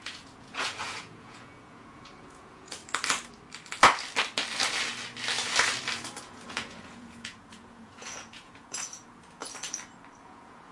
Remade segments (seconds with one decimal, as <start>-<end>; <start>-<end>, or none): 0.0-2.8; 6.2-9.4; 10.2-10.7